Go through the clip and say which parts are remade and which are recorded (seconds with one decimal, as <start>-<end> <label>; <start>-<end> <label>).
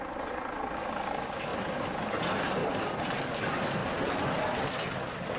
0.0-2.6 recorded; 2.6-3.2 remade; 3.2-5.4 recorded